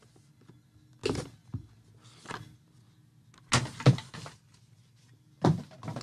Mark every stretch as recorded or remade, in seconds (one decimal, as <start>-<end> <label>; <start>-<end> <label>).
0.0-6.0 recorded